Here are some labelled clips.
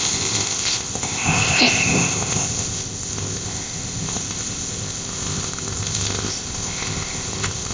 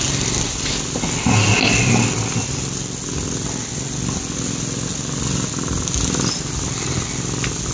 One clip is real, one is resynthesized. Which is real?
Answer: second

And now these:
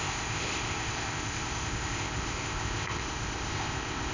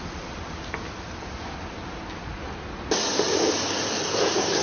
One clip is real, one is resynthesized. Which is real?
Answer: second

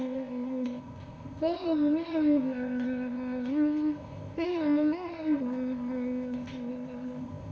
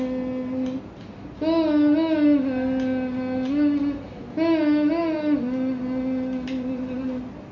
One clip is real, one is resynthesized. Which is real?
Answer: second